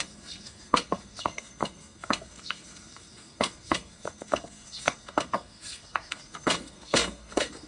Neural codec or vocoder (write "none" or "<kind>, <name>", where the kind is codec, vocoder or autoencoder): codec, SNAC